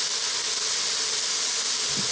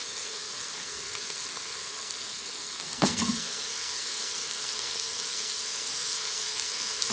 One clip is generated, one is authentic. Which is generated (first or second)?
second